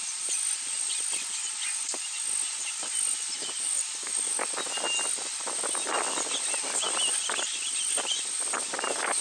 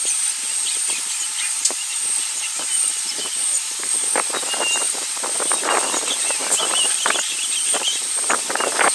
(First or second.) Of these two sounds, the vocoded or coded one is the second